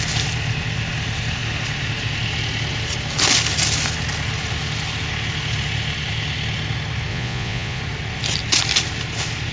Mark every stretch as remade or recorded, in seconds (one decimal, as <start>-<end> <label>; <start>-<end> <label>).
0.0-7.1 recorded; 7.1-7.8 remade; 7.8-9.5 recorded

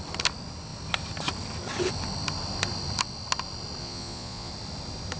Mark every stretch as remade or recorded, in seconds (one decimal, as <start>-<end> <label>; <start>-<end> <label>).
0.0-3.8 recorded; 3.8-4.5 remade; 4.5-5.2 recorded

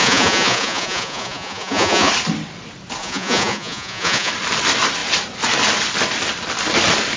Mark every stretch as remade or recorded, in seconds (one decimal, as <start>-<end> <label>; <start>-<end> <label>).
0.0-2.1 remade; 2.1-3.0 recorded; 3.0-4.3 remade; 4.3-7.2 recorded

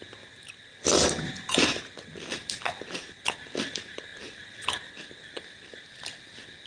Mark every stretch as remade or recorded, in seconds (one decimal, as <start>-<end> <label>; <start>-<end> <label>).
0.0-6.7 recorded

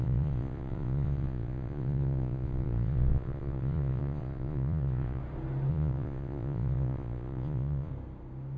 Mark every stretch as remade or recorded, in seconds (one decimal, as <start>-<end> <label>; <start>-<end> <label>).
0.0-5.2 remade; 5.2-5.7 recorded; 5.7-7.9 remade; 7.9-8.6 recorded

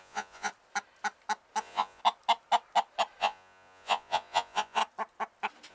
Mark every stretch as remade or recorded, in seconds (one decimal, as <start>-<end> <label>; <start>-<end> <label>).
0.0-0.5 remade; 0.5-1.6 recorded; 1.6-2.0 remade; 2.0-3.2 recorded; 3.2-4.8 remade; 4.8-5.7 recorded